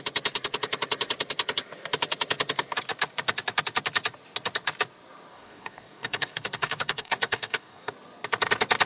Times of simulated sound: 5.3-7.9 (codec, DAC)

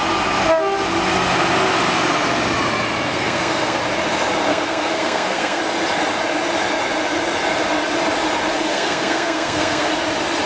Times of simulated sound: 3.1-3.8 (codec, SNAC); 4.5-5.6; 8.7-9.9

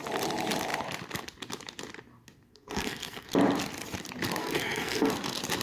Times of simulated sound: 2.5-3.3 (codec, SNAC); 4.4-5.1

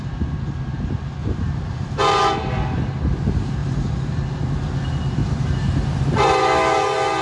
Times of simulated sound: 1.2-2.0 (vocoder, BigVGAN v2); 3.6-4.1; 5.2-6.4

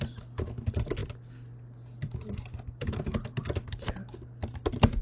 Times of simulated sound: none

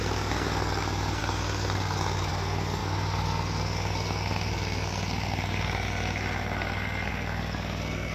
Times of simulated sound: 0.0-8.1 (codec, SNAC)

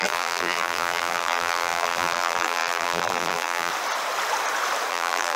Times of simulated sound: 0.0-3.7 (vocoder, BigVGAN v2); 4.9-5.4